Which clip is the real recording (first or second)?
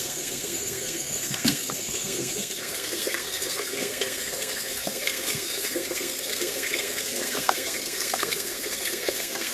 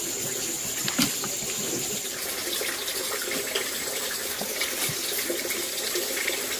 second